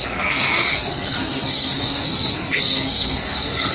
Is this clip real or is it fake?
fake